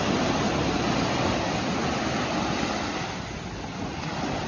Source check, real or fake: real